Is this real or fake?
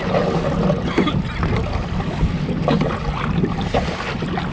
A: real